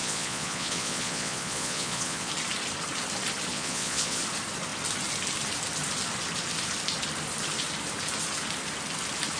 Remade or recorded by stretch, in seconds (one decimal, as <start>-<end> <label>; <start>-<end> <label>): 0.0-2.3 remade; 2.3-3.5 recorded; 3.5-4.2 remade; 4.2-9.4 recorded